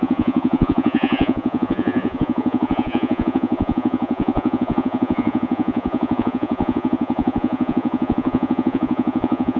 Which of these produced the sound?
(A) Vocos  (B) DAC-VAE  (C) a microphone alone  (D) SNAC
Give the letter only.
A